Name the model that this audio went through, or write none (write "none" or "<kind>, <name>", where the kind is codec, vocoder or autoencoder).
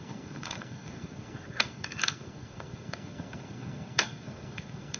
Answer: codec, SNAC